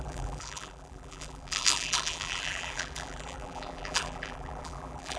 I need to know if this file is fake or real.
fake